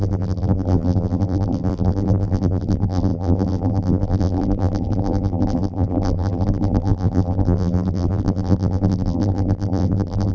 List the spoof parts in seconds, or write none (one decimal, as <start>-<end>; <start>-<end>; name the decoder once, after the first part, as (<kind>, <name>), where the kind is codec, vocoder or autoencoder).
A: 0.0-10.3 (vocoder, BigVGAN v2)